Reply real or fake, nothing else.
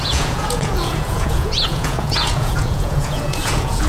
fake